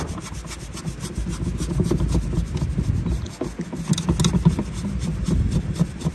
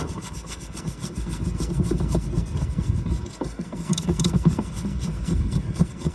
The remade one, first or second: second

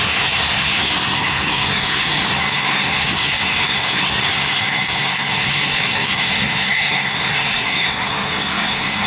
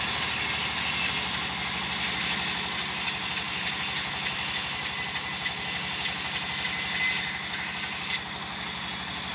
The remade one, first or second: first